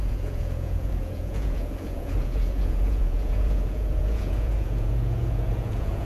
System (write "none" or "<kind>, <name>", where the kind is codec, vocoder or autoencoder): vocoder, Vocos